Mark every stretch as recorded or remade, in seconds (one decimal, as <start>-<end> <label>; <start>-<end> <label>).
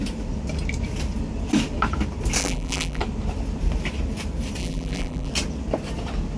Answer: 0.0-2.4 recorded; 2.4-3.0 remade; 3.0-4.6 recorded; 4.6-5.3 remade; 5.3-6.4 recorded